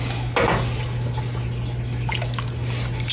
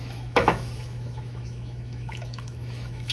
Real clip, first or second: first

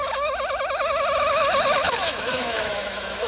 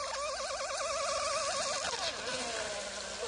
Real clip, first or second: second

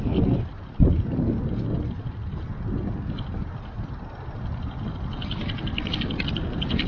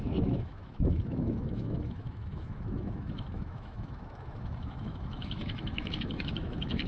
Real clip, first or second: first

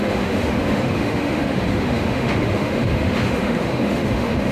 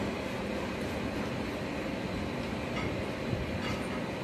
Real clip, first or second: second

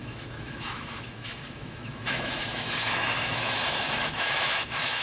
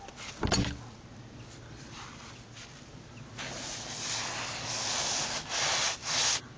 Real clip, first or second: second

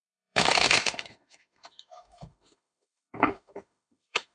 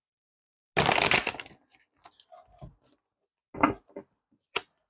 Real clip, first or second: second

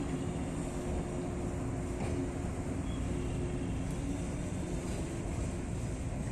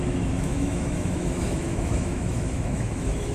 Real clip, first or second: first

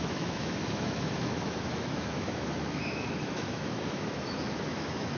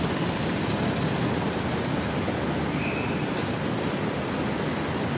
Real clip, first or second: second